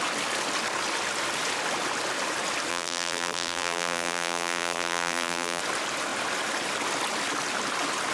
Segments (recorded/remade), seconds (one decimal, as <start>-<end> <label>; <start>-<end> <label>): 0.0-2.7 recorded; 2.7-5.6 remade; 5.6-8.1 recorded